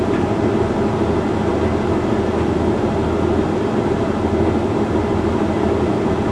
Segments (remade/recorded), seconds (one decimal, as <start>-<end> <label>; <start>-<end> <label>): 0.0-6.3 recorded